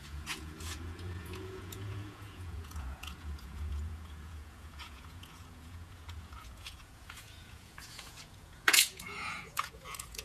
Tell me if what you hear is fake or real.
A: fake